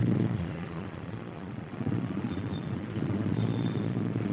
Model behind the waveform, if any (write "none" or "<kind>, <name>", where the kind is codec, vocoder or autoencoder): vocoder, Vocos